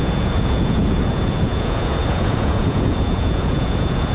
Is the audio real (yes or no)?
no